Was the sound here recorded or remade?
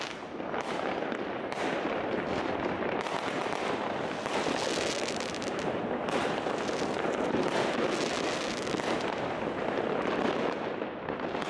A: recorded